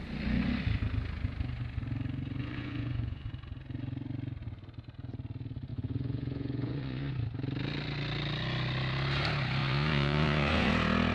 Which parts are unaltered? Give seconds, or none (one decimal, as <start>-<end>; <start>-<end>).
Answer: 0.0-2.4; 3.3-5.7; 7.1-9.6; 10.7-11.1